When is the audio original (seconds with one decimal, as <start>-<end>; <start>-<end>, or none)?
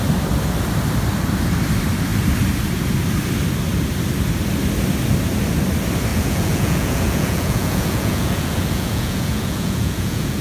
0.0-6.1